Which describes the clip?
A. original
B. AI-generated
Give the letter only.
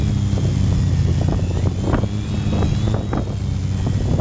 A